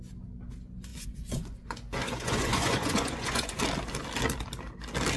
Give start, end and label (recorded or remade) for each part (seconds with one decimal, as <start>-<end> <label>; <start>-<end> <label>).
0.0-0.9 recorded; 0.9-3.6 remade; 3.6-5.2 recorded